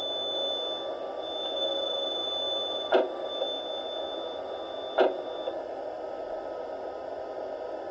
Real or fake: real